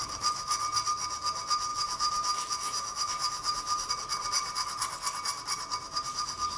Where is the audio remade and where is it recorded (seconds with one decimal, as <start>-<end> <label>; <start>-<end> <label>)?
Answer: 0.0-1.7 recorded; 1.7-3.9 remade; 3.9-6.6 recorded